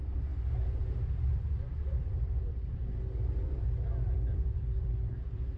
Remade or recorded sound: remade